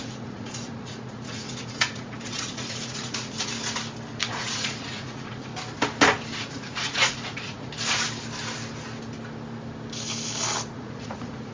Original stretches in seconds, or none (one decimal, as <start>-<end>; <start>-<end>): 3.5-4.3; 5.5-6.4; 7.7-10.7